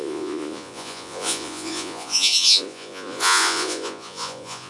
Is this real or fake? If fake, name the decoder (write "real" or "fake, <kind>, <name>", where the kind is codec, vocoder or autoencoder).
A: fake, vocoder, Vocos